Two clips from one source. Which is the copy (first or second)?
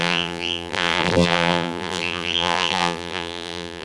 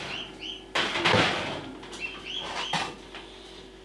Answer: first